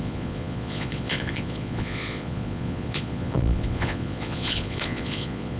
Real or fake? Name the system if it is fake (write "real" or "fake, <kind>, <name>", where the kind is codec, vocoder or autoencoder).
fake, vocoder, Vocos